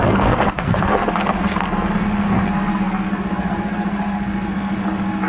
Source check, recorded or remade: remade